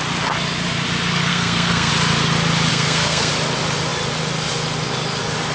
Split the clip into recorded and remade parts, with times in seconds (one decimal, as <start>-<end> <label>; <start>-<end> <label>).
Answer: 0.0-1.3 recorded; 1.3-1.9 remade; 1.9-2.7 recorded; 2.7-3.3 remade; 3.3-5.5 recorded